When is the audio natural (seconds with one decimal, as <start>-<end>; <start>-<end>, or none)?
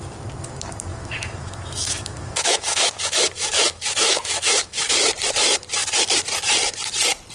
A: 0.0-0.9; 4.9-7.3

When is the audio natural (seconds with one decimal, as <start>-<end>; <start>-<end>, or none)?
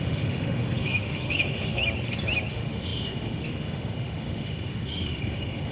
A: 1.8-2.5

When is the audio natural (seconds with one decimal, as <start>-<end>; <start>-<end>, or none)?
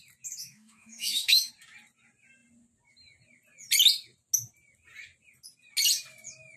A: 0.0-0.4; 1.5-6.6